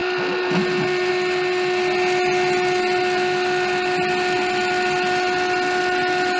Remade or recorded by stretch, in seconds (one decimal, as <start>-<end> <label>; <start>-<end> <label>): 0.0-1.1 remade; 1.1-6.4 recorded